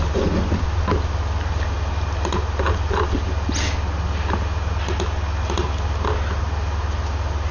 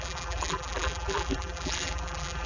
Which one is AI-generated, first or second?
second